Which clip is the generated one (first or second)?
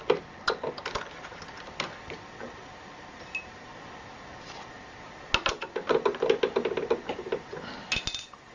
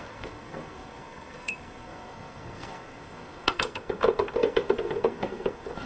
second